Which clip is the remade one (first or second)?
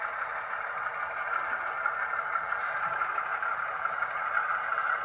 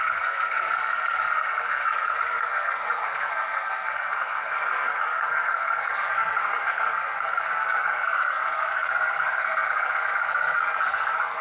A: second